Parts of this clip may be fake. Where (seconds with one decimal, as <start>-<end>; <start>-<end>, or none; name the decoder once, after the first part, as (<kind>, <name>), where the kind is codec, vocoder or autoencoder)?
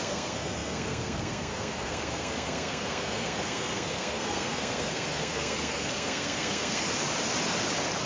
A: 0.0-6.9 (codec, SNAC)